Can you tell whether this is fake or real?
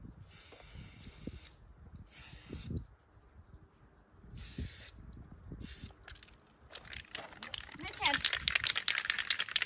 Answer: real